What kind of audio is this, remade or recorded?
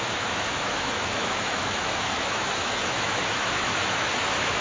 remade